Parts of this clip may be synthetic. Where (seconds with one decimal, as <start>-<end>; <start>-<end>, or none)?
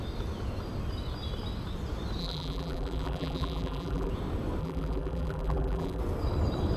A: 2.2-4.1; 4.6-6.0